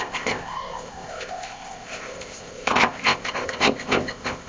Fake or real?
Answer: fake